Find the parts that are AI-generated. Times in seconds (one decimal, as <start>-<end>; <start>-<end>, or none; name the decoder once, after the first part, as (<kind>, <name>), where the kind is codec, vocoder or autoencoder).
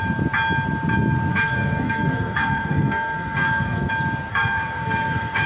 1.3-3.9 (codec, SNAC); 4.3-5.5